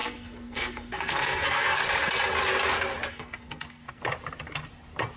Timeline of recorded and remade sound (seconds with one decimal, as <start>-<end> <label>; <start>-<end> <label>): 0.0-1.8 remade; 1.8-3.1 recorded; 3.1-4.0 remade; 4.0-5.2 recorded